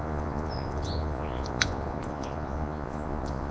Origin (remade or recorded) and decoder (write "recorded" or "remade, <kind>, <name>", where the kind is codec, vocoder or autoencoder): remade, vocoder, Vocos